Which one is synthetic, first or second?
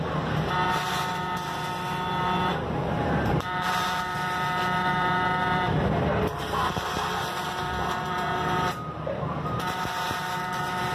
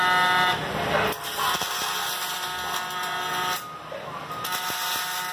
first